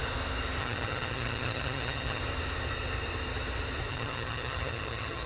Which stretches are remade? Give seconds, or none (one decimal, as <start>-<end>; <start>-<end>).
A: 0.6-2.2; 3.9-5.3